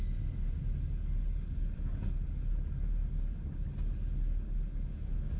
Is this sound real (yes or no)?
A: yes